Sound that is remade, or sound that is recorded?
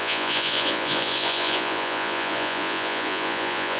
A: remade